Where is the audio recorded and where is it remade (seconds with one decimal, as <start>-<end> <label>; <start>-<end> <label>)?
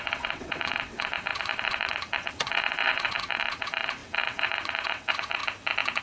0.0-5.4 remade; 5.4-6.0 recorded